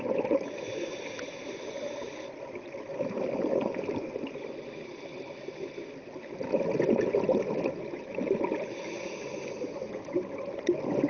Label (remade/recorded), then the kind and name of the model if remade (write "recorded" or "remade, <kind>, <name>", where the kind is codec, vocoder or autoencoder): recorded